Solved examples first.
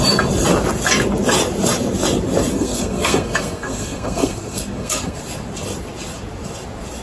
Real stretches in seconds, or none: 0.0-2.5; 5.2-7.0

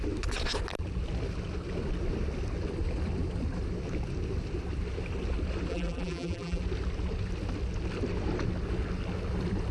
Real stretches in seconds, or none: 0.0-5.7; 6.6-9.7

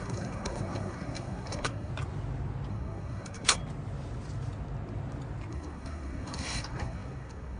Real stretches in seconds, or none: 1.9-2.7; 3.6-5.5